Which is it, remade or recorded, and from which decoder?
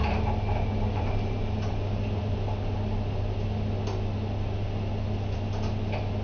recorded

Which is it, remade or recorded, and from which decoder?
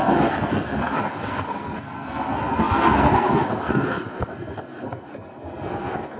remade, codec, SNAC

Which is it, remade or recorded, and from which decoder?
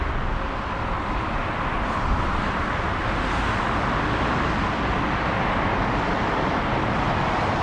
recorded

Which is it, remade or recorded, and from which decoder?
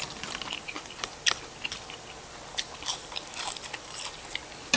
recorded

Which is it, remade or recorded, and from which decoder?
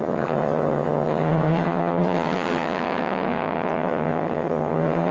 remade, vocoder, HiFi-GAN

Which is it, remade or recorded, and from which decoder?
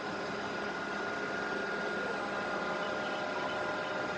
recorded